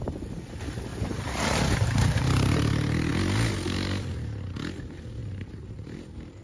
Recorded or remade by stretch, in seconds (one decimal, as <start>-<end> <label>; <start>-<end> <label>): 0.0-0.9 recorded; 0.9-2.7 remade; 2.7-5.2 recorded; 5.2-6.4 remade